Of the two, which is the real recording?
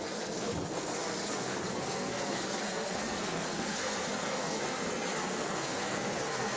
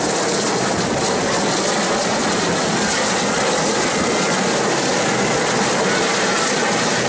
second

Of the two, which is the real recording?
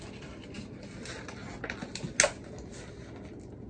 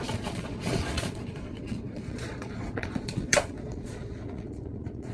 first